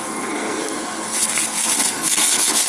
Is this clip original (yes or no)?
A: no